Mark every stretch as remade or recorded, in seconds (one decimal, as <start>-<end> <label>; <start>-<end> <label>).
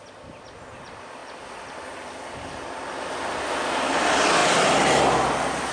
0.0-5.7 recorded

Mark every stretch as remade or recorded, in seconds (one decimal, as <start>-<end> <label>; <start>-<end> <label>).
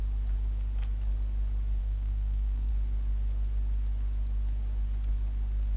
0.0-1.8 recorded; 1.8-2.7 remade; 2.7-5.8 recorded